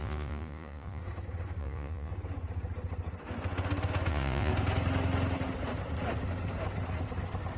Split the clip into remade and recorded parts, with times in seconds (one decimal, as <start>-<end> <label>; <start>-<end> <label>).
0.0-1.0 remade; 1.0-1.6 recorded; 1.6-2.1 remade; 2.1-4.1 recorded; 4.1-4.5 remade; 4.5-7.6 recorded

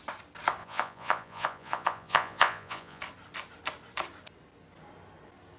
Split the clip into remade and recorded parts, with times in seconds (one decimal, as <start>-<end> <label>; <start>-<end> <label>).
0.0-0.6 recorded; 0.6-3.0 remade; 3.0-5.6 recorded

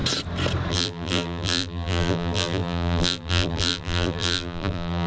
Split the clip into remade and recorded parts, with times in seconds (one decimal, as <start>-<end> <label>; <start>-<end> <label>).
0.0-0.7 recorded; 0.7-5.1 remade

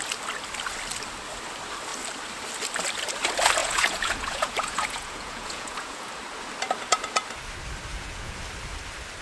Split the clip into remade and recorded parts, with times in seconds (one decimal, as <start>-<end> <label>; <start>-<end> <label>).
0.0-3.6 recorded; 3.6-6.1 remade; 6.1-7.9 recorded; 7.9-8.4 remade; 8.4-9.2 recorded

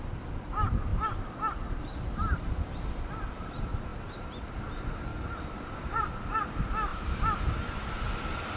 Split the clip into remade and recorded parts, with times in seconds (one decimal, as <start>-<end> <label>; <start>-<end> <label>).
0.0-0.9 recorded; 0.9-3.5 remade; 3.5-3.9 recorded; 3.9-4.5 remade; 4.5-5.1 recorded; 5.1-5.7 remade; 5.7-6.9 recorded; 6.9-7.4 remade; 7.4-8.6 recorded